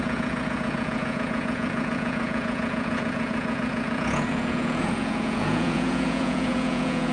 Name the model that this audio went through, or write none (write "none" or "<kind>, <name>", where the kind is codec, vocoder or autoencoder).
vocoder, Vocos